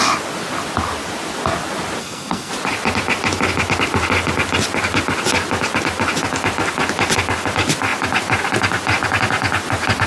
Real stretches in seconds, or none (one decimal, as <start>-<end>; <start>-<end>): 0.0-2.0; 2.5-10.1